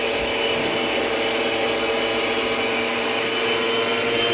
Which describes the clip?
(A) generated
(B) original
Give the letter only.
B